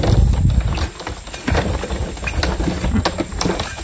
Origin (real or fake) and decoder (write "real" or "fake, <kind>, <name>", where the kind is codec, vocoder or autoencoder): real